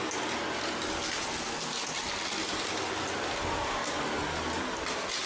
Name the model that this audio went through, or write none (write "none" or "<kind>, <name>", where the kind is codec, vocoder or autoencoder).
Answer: none